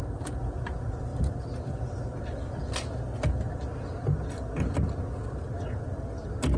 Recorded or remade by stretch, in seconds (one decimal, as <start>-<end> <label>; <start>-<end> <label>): 0.0-6.6 recorded